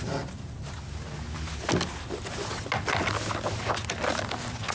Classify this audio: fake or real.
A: real